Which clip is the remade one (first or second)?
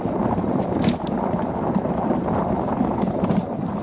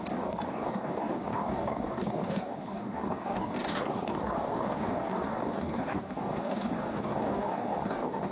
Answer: second